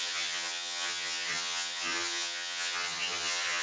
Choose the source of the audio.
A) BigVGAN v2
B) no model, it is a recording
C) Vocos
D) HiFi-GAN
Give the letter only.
D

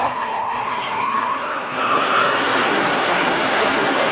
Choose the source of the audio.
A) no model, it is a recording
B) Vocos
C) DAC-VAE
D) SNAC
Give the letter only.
D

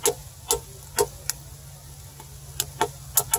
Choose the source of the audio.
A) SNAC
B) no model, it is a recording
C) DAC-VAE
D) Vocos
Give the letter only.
B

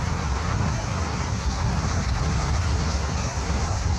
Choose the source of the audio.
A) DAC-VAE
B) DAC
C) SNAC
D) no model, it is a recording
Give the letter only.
C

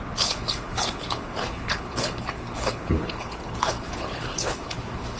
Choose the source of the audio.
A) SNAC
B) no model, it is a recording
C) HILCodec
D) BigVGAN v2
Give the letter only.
C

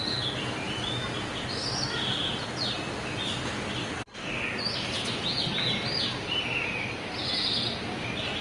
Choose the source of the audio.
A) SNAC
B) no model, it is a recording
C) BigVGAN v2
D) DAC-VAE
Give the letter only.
B